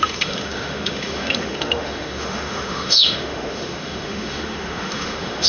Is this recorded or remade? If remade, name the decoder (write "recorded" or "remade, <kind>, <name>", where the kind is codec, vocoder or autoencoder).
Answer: remade, autoencoder, DAC-VAE